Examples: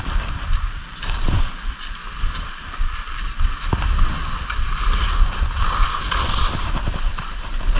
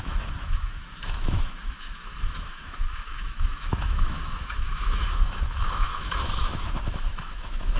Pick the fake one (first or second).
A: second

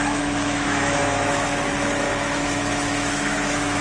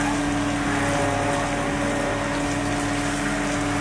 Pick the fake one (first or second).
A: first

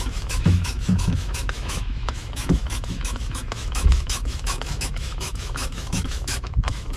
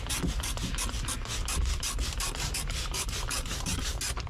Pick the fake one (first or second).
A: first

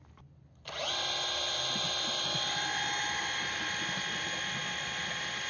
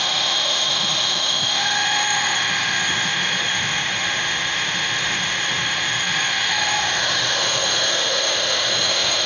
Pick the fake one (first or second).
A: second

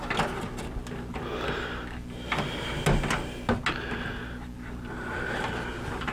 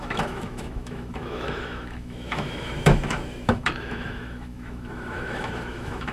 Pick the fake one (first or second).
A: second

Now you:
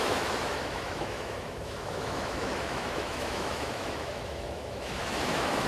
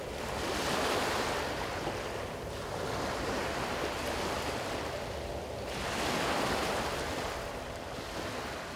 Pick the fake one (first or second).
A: first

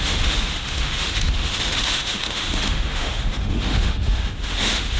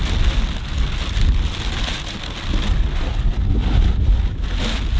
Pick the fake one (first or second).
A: first